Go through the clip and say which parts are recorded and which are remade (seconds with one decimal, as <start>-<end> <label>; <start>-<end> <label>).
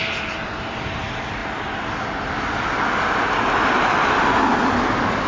0.0-1.4 remade; 1.4-4.0 recorded; 4.0-5.3 remade